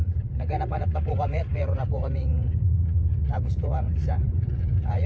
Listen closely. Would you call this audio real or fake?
fake